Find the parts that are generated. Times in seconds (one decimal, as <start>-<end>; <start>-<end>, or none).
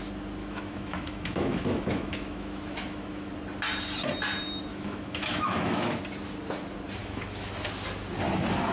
0.4-3.3; 4.7-6.0; 7.0-7.5